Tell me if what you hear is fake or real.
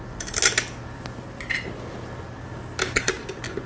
real